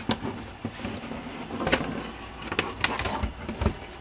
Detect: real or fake real